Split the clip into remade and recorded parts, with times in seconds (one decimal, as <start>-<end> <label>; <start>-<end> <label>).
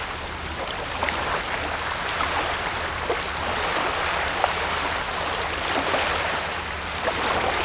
0.0-7.6 recorded